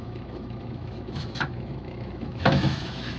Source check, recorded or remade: remade